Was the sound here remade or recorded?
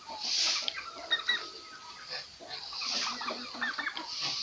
recorded